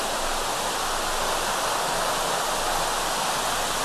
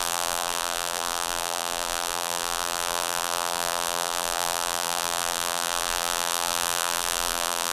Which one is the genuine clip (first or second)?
first